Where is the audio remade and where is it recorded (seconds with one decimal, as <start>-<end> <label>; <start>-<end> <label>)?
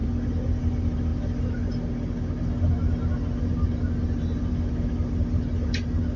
0.0-6.2 recorded